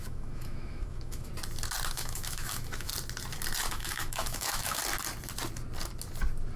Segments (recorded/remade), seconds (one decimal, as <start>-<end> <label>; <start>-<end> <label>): 0.0-1.3 remade; 1.3-1.9 recorded; 1.9-2.9 remade; 2.9-3.7 recorded; 3.7-4.8 remade; 4.8-6.6 recorded